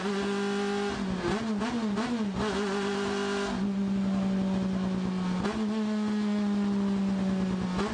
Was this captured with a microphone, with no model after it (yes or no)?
yes